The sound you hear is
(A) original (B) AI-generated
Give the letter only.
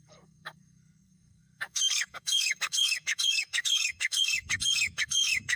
B